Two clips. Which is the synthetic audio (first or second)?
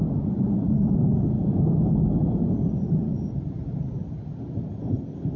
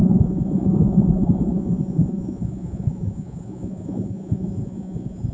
second